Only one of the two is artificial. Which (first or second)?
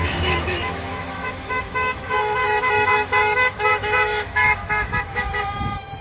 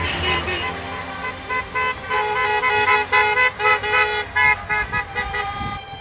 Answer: first